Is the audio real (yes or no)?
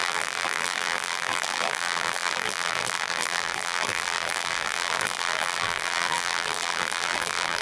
no